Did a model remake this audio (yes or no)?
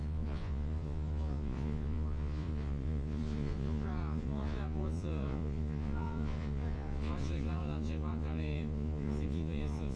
yes